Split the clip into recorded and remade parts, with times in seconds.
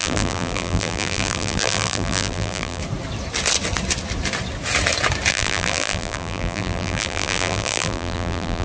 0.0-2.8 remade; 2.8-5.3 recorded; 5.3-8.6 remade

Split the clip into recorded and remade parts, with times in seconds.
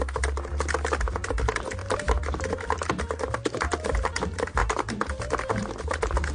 0.0-1.8 recorded; 1.8-2.5 remade; 2.5-4.6 recorded; 4.6-6.3 remade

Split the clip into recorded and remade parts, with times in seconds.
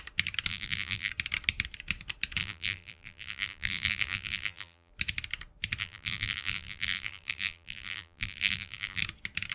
0.0-0.5 recorded; 0.5-1.1 remade; 1.1-2.4 recorded; 2.4-4.9 remade; 4.9-5.8 recorded; 5.8-9.0 remade; 9.0-9.5 recorded